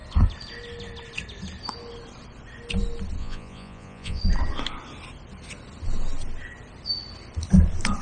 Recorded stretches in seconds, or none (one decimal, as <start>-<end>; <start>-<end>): 0.0-3.2; 4.2-8.0